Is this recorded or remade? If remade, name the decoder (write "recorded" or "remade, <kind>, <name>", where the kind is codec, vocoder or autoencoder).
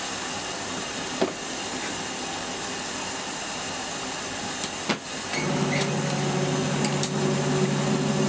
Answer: recorded